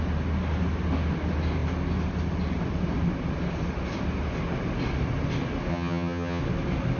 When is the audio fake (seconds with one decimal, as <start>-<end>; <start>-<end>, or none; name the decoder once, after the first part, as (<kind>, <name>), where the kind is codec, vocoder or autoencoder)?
5.7-6.4 (vocoder, HiFi-GAN)